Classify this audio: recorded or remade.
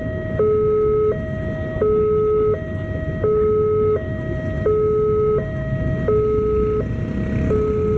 recorded